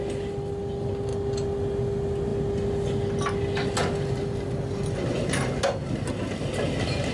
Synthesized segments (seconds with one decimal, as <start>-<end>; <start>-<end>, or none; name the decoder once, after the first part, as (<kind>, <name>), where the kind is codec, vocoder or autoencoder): none